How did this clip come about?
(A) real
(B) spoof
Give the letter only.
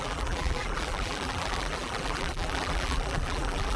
B